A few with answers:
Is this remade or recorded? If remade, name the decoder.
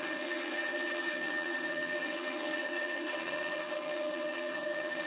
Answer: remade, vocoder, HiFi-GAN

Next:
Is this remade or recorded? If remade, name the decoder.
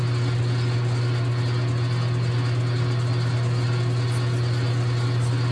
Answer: recorded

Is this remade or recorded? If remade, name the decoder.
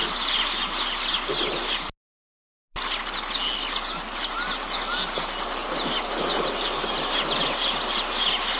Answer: recorded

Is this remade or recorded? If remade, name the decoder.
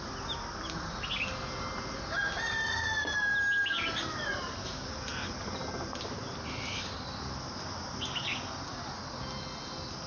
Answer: recorded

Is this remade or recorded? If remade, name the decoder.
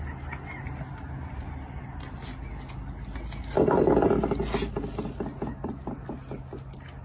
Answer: recorded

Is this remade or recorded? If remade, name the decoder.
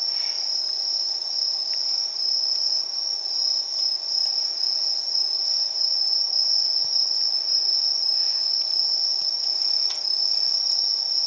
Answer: recorded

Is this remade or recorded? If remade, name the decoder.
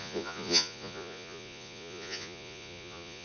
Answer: remade, vocoder, Vocos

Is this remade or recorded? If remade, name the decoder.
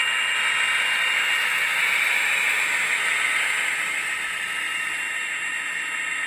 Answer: recorded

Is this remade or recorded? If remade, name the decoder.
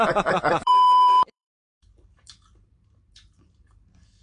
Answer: remade, vocoder, BigVGAN v2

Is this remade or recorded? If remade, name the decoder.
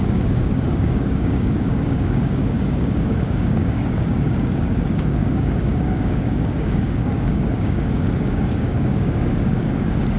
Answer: remade, codec, DAC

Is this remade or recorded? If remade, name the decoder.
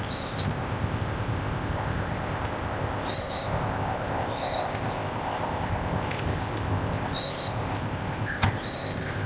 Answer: remade, codec, ZipCodec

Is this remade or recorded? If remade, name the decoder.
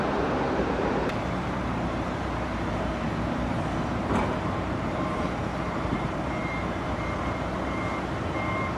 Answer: remade, vocoder, BigVGAN v2